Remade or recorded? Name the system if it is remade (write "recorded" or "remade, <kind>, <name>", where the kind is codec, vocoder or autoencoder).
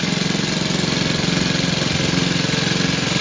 recorded